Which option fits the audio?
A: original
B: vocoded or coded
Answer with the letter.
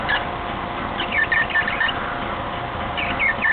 A